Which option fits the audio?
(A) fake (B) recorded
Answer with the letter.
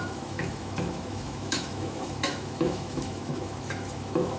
A